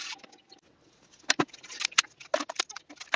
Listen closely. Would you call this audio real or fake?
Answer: real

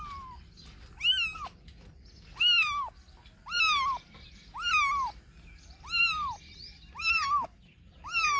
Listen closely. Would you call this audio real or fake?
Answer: real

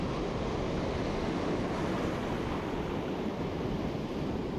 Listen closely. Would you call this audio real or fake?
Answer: real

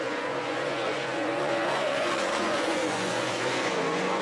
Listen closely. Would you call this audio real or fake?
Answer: fake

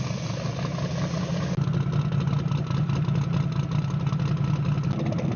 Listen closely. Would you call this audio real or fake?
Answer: real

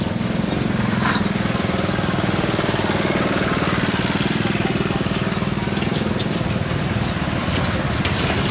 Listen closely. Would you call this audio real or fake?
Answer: real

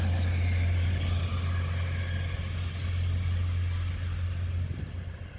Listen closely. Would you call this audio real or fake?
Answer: real